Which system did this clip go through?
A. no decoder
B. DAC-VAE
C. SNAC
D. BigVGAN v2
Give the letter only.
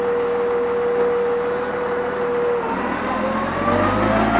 A